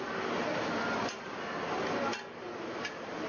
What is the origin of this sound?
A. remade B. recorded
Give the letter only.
B